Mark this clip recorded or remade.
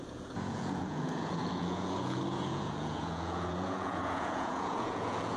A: remade